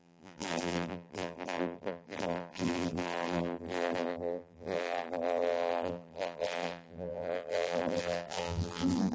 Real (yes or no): no